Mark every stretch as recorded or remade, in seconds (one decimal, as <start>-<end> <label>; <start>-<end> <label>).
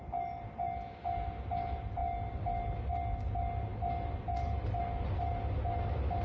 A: 0.0-6.2 recorded